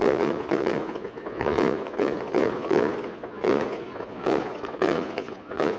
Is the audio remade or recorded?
remade